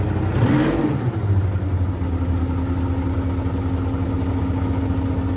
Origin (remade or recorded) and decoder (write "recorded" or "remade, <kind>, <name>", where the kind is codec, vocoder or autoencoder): recorded